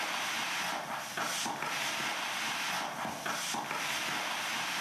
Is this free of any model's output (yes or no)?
yes